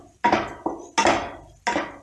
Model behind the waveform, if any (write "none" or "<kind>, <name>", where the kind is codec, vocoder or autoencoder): none